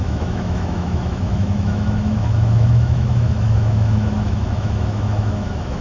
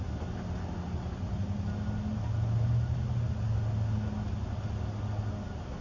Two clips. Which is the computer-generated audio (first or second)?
first